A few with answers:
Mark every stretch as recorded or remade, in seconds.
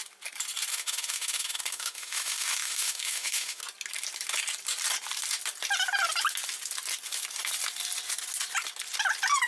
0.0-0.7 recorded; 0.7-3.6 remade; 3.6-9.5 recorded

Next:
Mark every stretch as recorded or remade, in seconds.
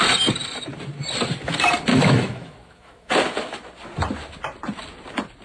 0.0-1.9 recorded; 1.9-3.1 remade; 3.1-5.4 recorded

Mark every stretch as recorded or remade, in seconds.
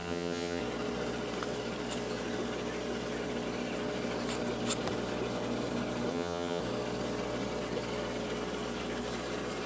0.0-0.6 remade; 0.6-6.1 recorded; 6.1-6.6 remade; 6.6-9.7 recorded